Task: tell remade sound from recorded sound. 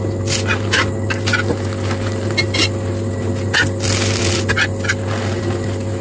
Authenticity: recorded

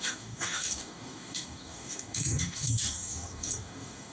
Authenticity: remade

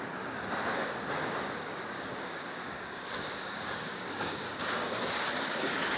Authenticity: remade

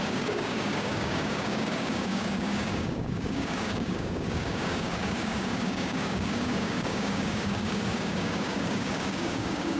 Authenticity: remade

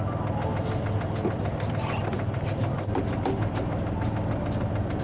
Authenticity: recorded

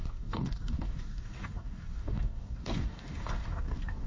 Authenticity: remade